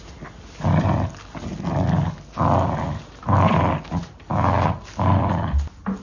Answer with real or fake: real